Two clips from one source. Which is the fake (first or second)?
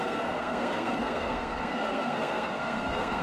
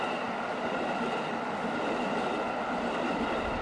first